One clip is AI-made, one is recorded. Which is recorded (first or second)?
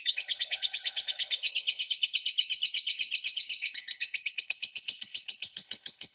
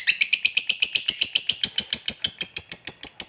second